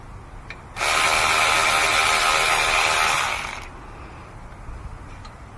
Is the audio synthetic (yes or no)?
no